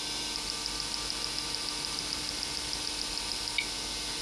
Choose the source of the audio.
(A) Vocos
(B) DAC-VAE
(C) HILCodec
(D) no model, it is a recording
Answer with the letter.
D